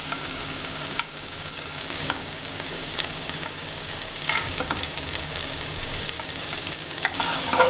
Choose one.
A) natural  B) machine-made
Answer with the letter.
B